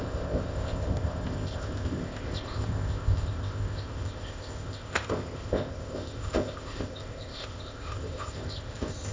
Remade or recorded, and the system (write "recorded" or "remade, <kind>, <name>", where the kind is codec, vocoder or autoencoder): remade, codec, ZipCodec